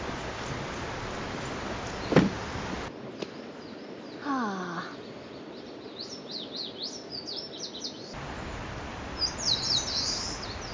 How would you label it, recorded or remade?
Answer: recorded